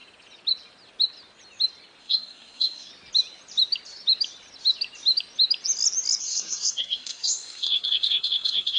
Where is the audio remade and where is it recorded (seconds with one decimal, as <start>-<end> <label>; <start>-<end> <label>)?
0.0-2.0 recorded; 2.0-2.9 remade; 2.9-6.2 recorded; 6.2-8.8 remade